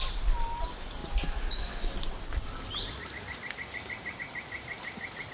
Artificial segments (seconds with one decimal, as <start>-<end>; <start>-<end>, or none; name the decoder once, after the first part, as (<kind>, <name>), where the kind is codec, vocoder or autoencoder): none